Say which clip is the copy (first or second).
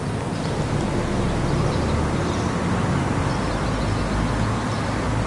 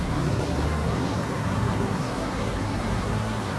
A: second